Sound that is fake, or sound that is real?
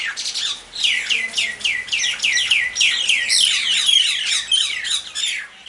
real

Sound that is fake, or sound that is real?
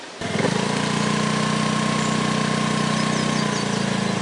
real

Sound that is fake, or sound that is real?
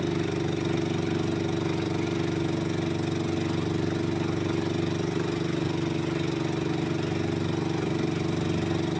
real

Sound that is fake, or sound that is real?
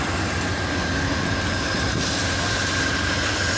fake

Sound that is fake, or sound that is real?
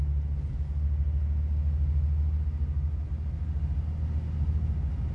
real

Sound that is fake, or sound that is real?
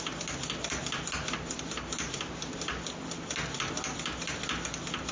real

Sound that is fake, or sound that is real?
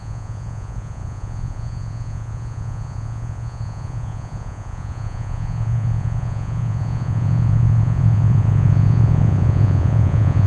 fake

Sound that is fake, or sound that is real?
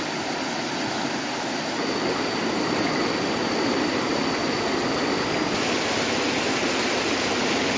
real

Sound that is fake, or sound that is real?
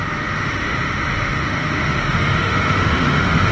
fake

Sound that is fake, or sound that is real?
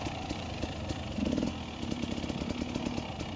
real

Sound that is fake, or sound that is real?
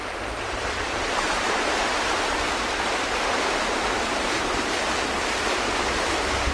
fake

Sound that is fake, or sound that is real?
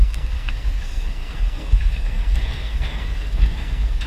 fake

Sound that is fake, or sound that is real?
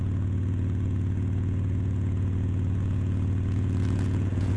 fake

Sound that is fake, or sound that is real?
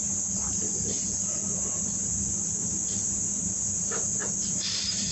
real